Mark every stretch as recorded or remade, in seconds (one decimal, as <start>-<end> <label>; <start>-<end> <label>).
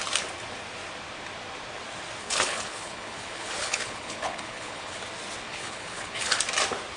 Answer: 0.0-2.2 recorded; 2.2-5.0 remade; 5.0-5.5 recorded; 5.5-6.3 remade; 6.3-7.0 recorded